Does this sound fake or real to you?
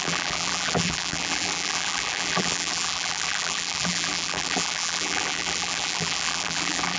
fake